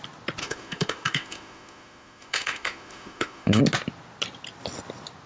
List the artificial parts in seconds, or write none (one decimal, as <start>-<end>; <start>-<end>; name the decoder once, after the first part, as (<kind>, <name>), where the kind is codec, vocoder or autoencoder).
0.4-3.6 (autoencoder, DAC-VAE)

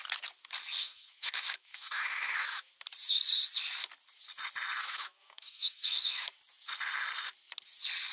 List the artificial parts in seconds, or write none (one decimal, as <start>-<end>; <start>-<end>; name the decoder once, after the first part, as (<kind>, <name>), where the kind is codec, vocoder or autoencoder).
0.8-2.7 (autoencoder, DAC-VAE); 4.8-6.3

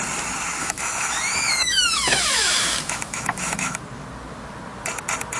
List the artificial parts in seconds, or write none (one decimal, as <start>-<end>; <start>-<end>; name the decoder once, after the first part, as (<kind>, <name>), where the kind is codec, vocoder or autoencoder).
0.6-3.8 (autoencoder, DAC-VAE)

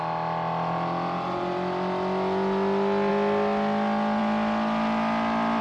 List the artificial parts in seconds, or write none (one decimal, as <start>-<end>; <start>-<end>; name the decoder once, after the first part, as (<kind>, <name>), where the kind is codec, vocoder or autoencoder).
none